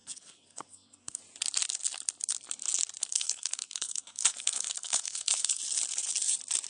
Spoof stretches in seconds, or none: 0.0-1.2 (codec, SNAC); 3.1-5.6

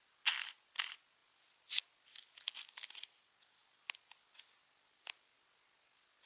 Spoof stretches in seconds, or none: none

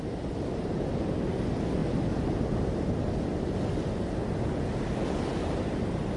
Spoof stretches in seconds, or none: none